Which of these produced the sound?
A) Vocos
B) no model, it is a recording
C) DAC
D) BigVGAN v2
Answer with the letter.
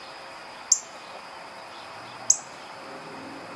B